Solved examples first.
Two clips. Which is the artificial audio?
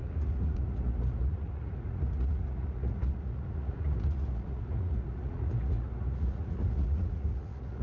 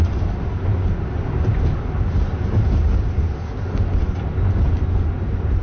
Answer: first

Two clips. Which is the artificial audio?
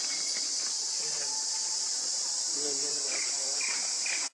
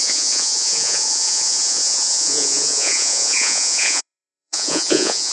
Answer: second